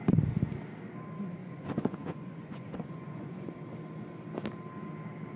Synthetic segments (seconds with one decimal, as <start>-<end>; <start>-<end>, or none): 1.4-3.5